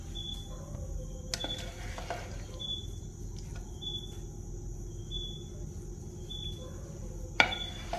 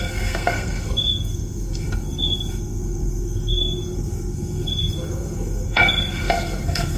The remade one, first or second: second